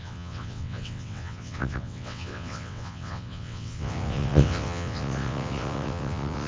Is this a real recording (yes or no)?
no